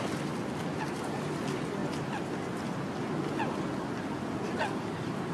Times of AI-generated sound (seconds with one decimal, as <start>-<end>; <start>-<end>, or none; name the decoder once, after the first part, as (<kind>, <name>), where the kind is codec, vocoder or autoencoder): none

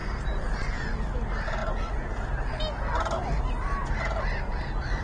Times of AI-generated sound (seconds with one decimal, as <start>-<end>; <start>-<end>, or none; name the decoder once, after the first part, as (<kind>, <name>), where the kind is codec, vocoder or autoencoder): 0.0-0.8 (vocoder, BigVGAN v2)

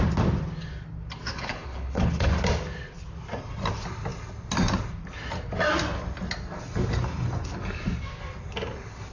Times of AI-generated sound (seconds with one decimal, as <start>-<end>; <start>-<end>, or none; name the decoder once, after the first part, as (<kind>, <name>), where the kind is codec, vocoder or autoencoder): 1.3-2.3 (codec, HILCodec)

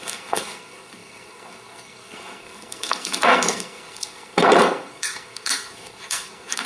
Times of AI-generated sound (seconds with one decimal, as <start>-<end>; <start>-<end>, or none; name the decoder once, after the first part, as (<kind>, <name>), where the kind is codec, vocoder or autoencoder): 0.0-6.7 (codec, SNAC)

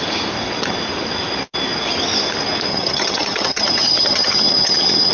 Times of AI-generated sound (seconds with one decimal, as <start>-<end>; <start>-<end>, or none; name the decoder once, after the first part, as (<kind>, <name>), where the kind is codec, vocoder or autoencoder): 2.7-5.1 (vocoder, HiFi-GAN)

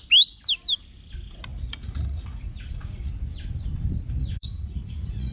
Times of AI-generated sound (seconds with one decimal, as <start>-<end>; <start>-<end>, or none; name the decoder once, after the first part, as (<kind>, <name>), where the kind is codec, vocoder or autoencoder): 1.5-3.1 (vocoder, Vocos); 4.2-5.3

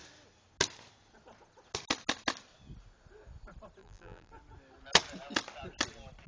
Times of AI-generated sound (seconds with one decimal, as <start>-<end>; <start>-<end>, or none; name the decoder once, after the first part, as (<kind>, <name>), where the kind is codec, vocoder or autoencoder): 3.8-4.3 (vocoder, BigVGAN v2)

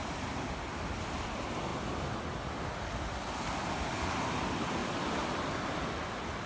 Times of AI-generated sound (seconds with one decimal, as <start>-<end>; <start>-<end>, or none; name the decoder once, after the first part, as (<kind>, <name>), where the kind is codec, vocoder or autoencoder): 0.0-0.5 (vocoder, BigVGAN v2); 1.7-2.2; 4.8-5.5